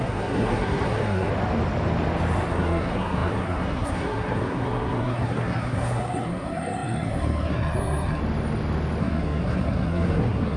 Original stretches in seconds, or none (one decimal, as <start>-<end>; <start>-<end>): 1.3-2.5; 8.2-9.0